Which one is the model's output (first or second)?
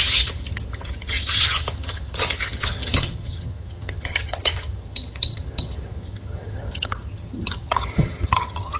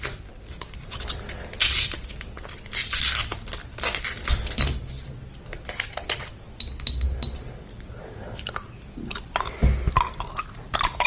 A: first